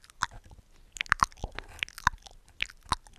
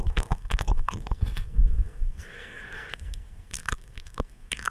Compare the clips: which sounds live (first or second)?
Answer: first